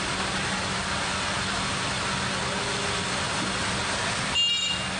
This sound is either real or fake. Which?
real